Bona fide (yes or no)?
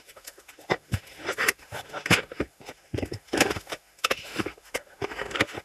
no